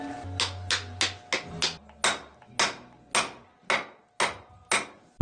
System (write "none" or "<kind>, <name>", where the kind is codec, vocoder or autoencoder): none